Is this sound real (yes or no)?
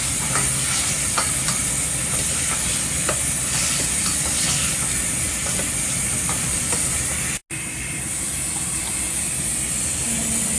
yes